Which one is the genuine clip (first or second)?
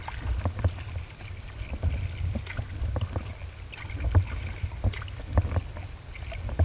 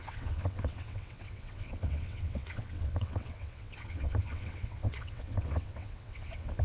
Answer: first